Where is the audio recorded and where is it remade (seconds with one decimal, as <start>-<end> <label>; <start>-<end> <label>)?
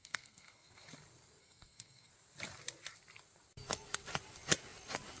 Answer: 0.0-0.9 remade; 0.9-1.4 recorded; 1.4-2.1 remade; 2.1-5.2 recorded